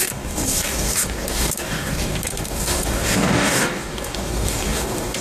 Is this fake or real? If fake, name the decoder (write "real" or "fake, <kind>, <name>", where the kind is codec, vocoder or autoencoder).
fake, codec, DAC